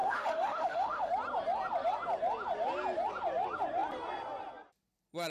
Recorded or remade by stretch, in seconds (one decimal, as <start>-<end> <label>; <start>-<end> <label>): 0.0-1.1 remade; 1.1-5.3 recorded